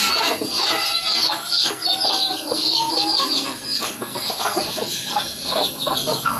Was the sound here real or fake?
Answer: fake